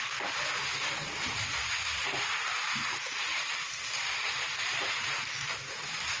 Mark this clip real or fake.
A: real